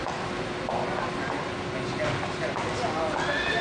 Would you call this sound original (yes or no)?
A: yes